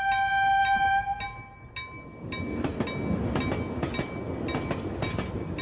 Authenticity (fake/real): real